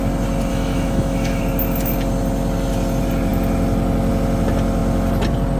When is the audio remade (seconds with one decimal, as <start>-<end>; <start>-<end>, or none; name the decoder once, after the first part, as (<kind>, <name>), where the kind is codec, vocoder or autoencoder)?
0.5-1.4 (autoencoder, DAC-VAE)